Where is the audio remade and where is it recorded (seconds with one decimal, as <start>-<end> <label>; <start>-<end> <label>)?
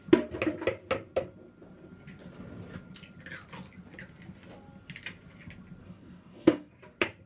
0.0-5.8 recorded; 5.8-6.7 remade; 6.7-7.3 recorded